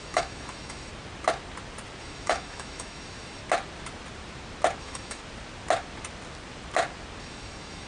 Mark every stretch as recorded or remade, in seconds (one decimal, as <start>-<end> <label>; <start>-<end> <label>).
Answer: 0.0-0.9 remade; 0.9-2.0 recorded; 2.0-3.4 remade; 3.4-4.8 recorded; 4.8-5.2 remade; 5.2-7.2 recorded; 7.2-7.9 remade